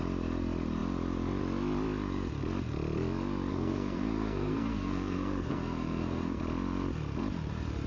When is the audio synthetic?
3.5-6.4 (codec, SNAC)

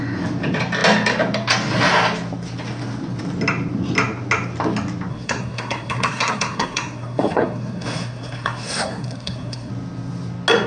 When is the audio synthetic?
5.1-9.7 (codec, SNAC)

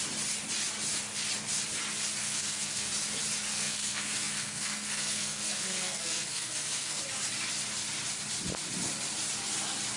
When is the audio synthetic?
2.2-2.9 (codec, SNAC); 3.5-7.0

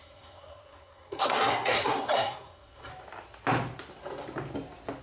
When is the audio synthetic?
0.0-2.9 (codec, SNAC)

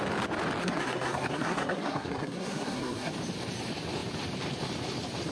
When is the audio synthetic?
0.6-3.1 (codec, SNAC)

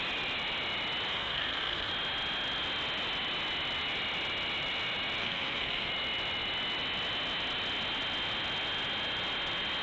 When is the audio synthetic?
1.1-1.9 (codec, SNAC); 5.2-5.9

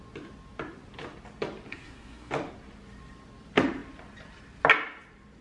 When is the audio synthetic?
1.7-2.3 (codec, SNAC)